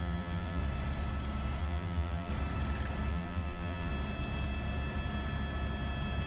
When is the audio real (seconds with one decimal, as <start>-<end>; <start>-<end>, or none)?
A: 0.6-1.6; 2.3-3.1; 3.9-6.3